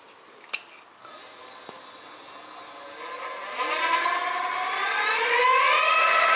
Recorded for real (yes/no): yes